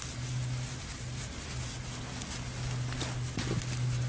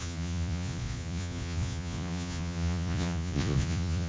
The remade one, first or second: second